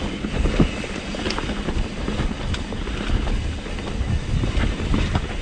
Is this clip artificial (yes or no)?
no